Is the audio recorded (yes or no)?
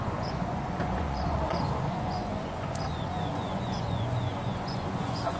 no